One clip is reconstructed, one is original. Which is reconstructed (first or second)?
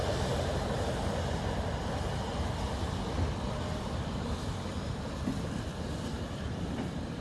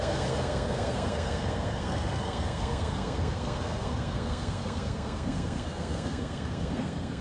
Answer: second